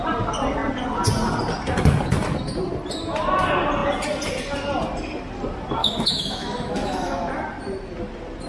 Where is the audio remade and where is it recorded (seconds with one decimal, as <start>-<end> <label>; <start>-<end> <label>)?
0.0-5.8 recorded; 5.8-7.3 remade; 7.3-8.5 recorded